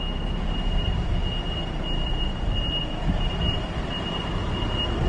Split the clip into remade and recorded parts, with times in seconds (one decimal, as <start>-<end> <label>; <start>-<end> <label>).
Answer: 0.0-5.1 recorded